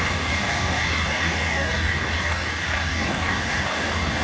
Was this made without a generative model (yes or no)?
no